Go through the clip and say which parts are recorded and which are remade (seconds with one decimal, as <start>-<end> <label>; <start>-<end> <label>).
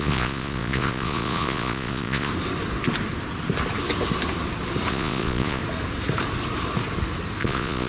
0.0-2.3 remade; 2.3-4.9 recorded; 4.9-5.6 remade; 5.6-7.4 recorded; 7.4-7.9 remade